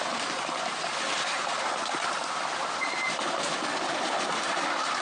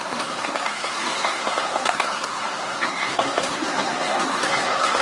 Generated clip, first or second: second